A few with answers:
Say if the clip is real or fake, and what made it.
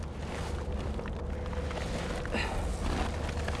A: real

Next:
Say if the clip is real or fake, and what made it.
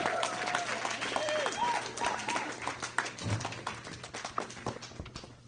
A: real